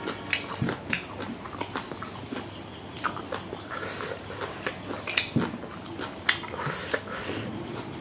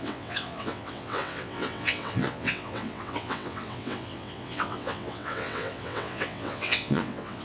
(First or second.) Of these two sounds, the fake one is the second